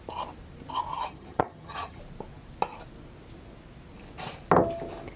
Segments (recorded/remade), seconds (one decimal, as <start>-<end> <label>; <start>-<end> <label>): 0.0-0.9 recorded; 0.9-2.0 remade; 2.0-5.2 recorded